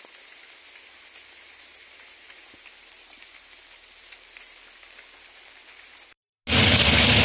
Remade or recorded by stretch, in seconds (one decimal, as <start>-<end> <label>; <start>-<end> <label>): 0.0-7.2 recorded